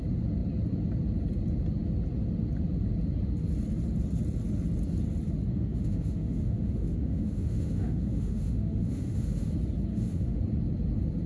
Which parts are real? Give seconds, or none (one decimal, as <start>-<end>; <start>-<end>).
0.0-5.5; 9.5-9.9; 10.4-11.3